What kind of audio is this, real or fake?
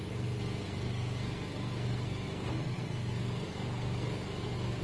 fake